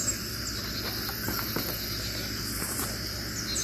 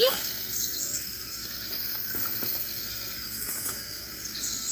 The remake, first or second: second